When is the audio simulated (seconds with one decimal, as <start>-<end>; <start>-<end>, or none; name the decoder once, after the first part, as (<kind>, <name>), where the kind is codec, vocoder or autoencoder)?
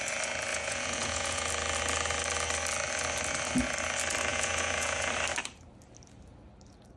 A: 0.5-1.5 (vocoder, Vocos); 4.3-5.1